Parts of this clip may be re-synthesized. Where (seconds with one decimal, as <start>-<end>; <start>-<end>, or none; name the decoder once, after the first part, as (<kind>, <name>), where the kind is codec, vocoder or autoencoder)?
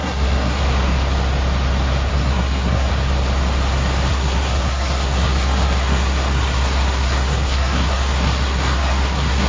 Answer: 0.0-0.6 (codec, SNAC); 2.1-2.9; 4.1-9.5